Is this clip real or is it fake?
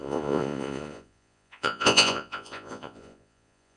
fake